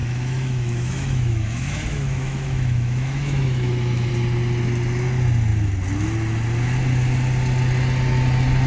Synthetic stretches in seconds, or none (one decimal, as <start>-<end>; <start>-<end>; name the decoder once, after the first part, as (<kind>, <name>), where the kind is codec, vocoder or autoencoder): 0.0-4.1 (autoencoder, DAC-VAE)